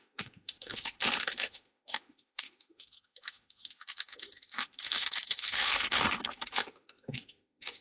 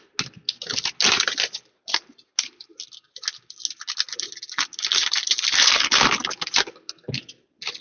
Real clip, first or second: second